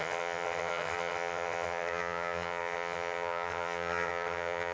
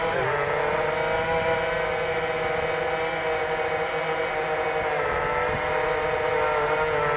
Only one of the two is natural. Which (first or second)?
second